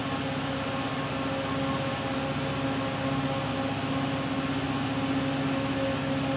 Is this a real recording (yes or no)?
yes